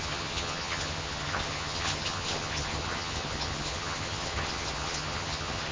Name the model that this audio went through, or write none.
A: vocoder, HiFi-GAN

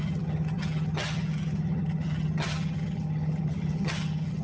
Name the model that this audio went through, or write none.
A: vocoder, HiFi-GAN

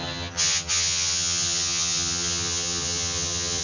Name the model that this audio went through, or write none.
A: vocoder, HiFi-GAN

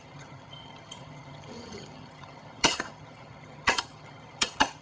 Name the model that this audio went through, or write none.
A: vocoder, HiFi-GAN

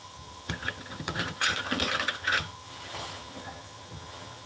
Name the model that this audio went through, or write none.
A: vocoder, HiFi-GAN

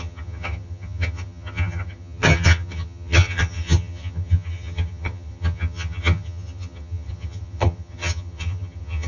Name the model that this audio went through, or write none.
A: vocoder, HiFi-GAN